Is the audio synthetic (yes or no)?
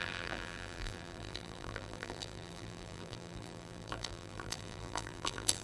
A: yes